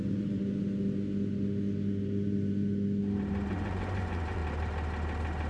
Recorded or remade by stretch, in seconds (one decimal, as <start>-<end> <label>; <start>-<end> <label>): 0.0-0.4 remade; 0.4-3.5 recorded; 3.5-4.4 remade; 4.4-5.5 recorded